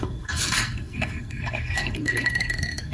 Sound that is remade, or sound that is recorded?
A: remade